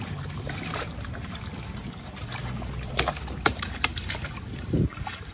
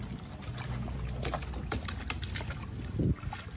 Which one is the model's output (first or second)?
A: first